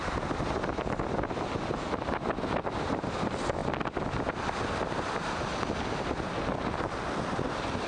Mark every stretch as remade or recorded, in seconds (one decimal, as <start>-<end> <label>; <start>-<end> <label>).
0.0-7.9 recorded

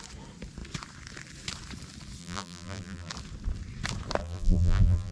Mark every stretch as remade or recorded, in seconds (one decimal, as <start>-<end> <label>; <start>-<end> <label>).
0.0-2.2 recorded; 2.2-3.1 remade; 3.1-4.2 recorded; 4.2-5.1 remade

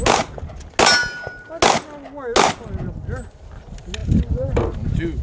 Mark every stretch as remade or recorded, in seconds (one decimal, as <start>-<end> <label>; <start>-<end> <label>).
0.0-4.0 recorded; 4.0-4.6 remade; 4.6-5.2 recorded